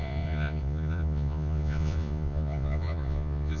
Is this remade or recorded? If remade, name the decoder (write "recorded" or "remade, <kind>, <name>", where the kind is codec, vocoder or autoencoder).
remade, vocoder, Vocos